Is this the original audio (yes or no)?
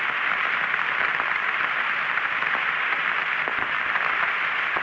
no